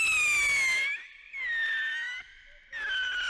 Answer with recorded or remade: recorded